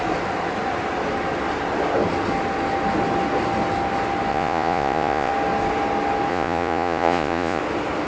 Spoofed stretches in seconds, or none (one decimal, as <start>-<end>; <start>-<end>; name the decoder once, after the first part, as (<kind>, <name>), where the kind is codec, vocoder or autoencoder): 4.3-5.3 (vocoder, Vocos); 6.3-7.6